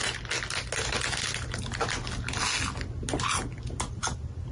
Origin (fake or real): real